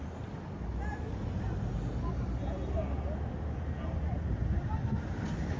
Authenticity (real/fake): real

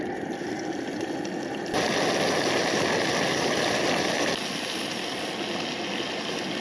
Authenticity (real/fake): real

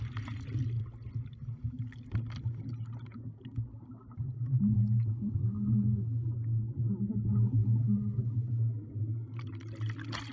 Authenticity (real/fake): real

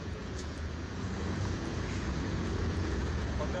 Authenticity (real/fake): fake